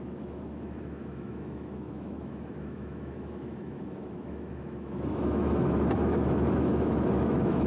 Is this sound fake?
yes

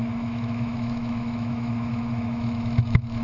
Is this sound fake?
yes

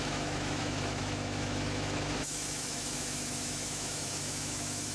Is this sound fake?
yes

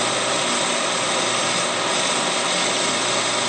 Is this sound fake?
no